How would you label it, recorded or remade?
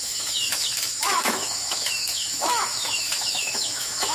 remade